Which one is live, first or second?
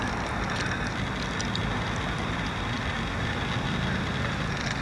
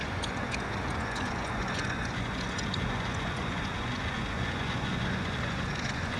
first